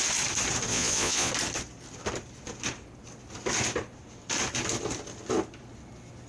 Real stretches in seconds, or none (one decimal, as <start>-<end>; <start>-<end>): 0.0-0.7; 1.3-6.3